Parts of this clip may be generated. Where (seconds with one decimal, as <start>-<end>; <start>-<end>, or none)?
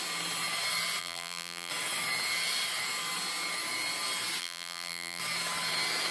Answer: 1.0-1.7; 4.4-5.2